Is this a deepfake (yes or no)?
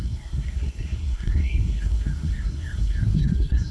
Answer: yes